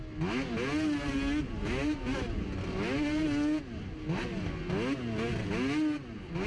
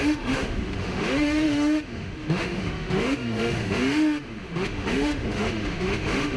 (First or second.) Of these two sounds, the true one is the first